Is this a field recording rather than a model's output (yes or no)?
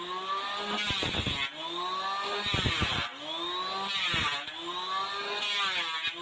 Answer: yes